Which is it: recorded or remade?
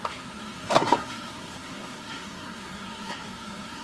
remade